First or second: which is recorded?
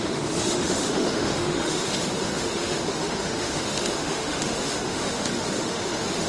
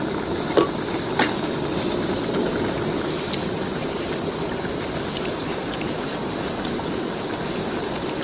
second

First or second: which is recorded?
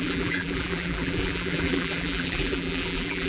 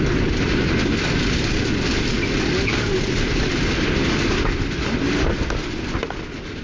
second